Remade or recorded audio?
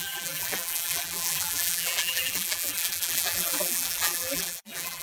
remade